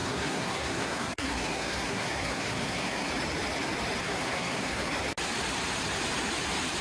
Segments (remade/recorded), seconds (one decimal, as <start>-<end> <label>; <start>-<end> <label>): 0.0-3.1 remade; 3.1-4.0 recorded; 4.0-4.9 remade; 4.9-6.8 recorded